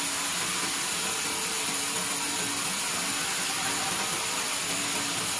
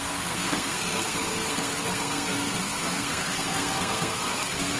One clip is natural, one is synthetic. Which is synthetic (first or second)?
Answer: second